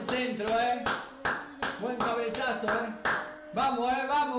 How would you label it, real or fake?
real